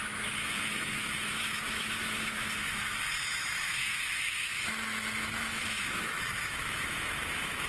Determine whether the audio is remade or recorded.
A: remade